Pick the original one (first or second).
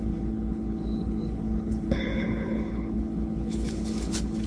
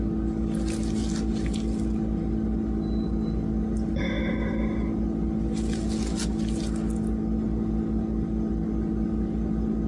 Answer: second